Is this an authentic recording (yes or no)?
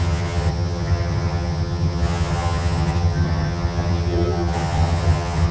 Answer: no